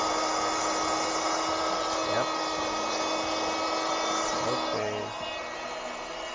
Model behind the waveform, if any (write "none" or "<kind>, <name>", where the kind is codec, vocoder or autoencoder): none